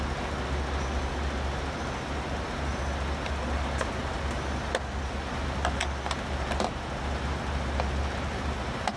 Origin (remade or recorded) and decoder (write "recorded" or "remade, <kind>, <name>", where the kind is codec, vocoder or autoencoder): recorded